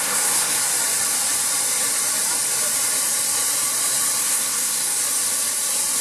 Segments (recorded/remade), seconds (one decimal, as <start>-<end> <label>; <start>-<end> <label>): 0.0-0.6 remade; 0.6-4.2 recorded; 4.2-5.0 remade; 5.0-6.0 recorded